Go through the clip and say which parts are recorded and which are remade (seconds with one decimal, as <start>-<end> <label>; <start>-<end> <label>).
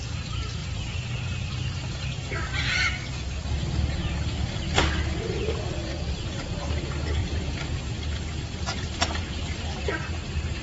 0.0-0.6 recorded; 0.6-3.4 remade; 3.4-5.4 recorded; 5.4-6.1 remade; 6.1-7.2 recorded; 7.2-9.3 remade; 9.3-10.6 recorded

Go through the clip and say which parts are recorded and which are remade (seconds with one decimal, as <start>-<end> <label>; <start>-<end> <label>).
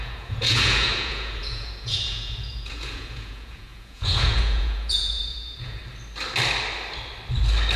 0.0-5.8 remade; 5.8-7.8 recorded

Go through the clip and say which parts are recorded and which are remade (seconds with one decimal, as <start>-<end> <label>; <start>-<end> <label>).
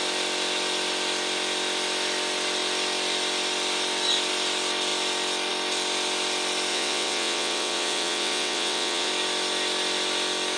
0.0-6.7 recorded; 6.7-9.1 remade; 9.1-10.6 recorded